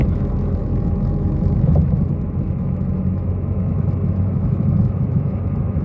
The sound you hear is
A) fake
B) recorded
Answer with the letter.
A